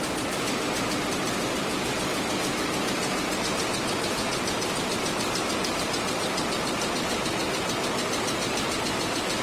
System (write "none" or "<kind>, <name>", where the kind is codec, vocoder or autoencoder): none